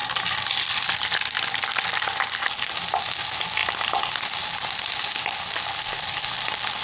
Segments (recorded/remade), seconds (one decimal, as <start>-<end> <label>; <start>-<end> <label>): 0.0-1.7 remade; 1.7-6.8 recorded